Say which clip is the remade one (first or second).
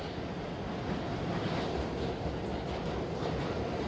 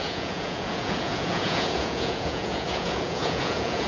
second